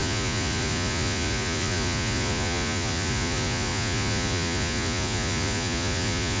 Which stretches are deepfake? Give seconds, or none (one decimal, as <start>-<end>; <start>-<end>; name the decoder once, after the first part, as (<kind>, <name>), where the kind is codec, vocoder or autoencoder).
0.0-6.4 (vocoder, Vocos)